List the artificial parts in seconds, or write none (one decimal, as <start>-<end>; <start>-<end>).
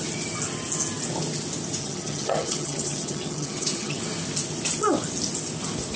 1.8-4.0